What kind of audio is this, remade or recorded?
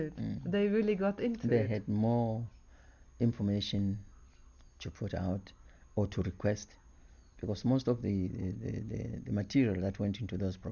recorded